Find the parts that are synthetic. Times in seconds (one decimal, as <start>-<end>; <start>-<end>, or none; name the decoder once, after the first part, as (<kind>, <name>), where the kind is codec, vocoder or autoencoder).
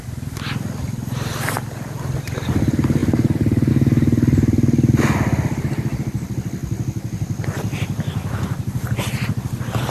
none